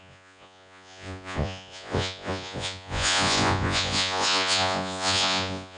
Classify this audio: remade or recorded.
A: remade